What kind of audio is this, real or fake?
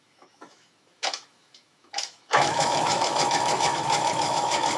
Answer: fake